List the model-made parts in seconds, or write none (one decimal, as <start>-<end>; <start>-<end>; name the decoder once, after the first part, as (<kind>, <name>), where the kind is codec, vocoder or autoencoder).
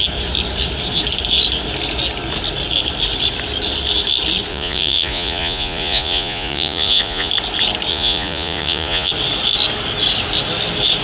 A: 4.5-7.3 (vocoder, Vocos); 7.9-9.1